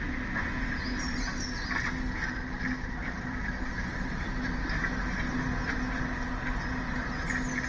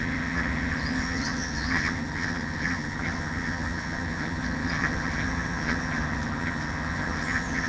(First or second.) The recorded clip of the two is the first